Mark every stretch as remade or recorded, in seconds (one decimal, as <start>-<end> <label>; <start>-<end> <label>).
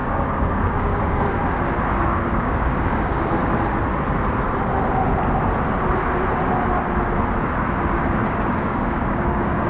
0.0-1.4 remade; 1.4-1.9 recorded; 1.9-3.4 remade; 3.4-8.2 recorded; 8.2-9.7 remade